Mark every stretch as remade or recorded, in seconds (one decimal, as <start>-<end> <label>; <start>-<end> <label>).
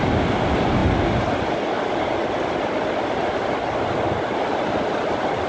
0.0-0.8 remade; 0.8-4.1 recorded; 4.1-5.5 remade